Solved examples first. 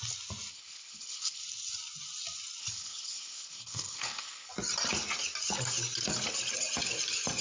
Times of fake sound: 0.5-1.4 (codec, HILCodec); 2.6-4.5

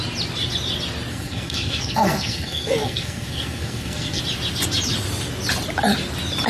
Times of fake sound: 1.1-4.2 (codec, SNAC)